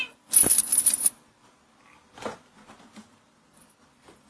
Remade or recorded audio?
remade